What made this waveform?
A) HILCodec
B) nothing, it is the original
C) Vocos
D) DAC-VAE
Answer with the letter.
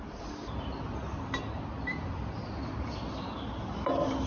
B